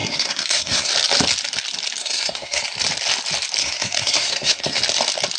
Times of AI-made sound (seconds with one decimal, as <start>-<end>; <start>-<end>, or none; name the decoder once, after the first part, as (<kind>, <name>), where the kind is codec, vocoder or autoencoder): 0.0-0.9 (codec, SNAC); 2.0-2.6; 3.6-4.8